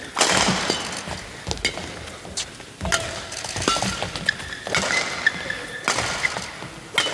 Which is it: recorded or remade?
recorded